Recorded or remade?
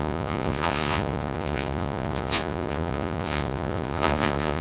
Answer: remade